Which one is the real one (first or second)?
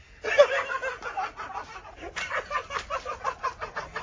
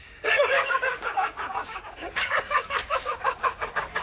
first